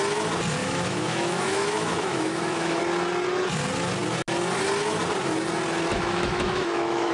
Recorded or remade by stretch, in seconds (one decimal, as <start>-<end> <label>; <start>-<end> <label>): 0.0-0.6 recorded; 0.6-2.8 remade; 2.8-5.9 recorded; 5.9-7.1 remade

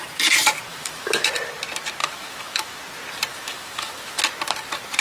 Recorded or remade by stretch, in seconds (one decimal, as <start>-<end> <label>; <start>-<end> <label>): 0.0-0.7 recorded; 0.7-1.3 remade; 1.3-2.0 recorded; 2.0-2.8 remade; 2.8-3.3 recorded; 3.3-4.2 remade; 4.2-5.0 recorded

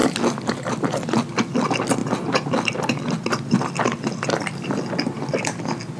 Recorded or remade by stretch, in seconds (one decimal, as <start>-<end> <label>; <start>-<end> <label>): 0.0-6.0 recorded

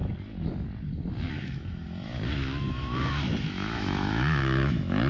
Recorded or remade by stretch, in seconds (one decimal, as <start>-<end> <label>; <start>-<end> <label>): 0.0-1.3 recorded; 1.3-5.1 remade

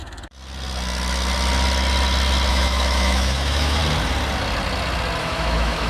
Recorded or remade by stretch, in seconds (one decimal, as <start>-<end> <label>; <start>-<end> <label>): 0.0-2.5 recorded; 2.5-3.8 remade; 3.8-5.2 recorded; 5.2-5.9 remade